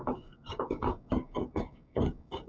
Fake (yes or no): yes